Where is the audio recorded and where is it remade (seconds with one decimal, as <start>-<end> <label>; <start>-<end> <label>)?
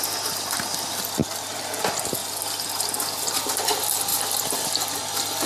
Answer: 0.0-1.2 recorded; 1.2-1.8 remade; 1.8-5.5 recorded